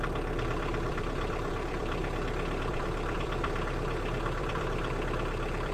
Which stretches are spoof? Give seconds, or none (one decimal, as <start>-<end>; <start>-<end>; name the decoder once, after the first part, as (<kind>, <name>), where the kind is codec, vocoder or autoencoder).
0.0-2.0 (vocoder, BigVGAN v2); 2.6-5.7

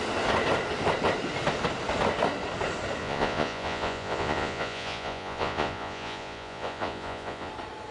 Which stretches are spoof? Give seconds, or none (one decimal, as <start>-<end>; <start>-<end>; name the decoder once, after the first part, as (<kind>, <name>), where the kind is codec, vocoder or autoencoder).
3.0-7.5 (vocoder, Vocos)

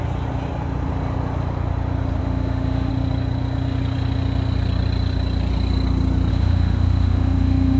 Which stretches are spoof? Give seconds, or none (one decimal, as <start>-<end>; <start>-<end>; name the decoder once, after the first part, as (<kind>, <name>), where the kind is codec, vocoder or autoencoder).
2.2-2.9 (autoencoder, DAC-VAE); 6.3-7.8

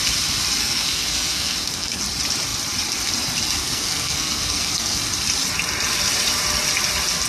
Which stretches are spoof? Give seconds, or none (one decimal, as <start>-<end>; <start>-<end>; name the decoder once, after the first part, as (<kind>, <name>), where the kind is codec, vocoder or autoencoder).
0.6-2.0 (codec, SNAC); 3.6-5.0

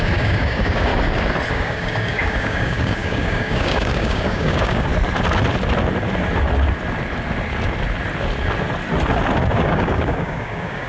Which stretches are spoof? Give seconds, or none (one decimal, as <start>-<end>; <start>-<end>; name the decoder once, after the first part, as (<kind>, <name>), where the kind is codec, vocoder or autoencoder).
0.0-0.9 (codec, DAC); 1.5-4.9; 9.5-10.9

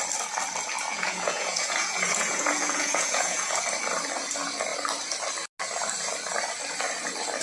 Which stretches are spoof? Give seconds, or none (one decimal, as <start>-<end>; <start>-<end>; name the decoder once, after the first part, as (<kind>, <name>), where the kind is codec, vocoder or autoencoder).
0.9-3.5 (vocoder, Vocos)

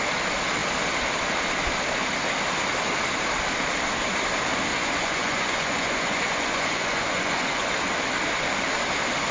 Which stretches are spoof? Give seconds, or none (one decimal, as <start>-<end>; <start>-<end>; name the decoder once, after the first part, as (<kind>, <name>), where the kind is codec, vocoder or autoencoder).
4.7-7.7 (vocoder, Vocos)

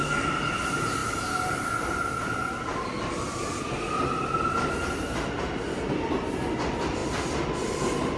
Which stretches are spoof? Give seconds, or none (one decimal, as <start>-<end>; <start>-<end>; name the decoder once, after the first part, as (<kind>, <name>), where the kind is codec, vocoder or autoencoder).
none